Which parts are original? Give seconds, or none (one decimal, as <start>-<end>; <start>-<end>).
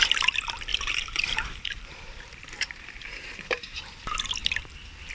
0.0-0.7; 3.8-5.1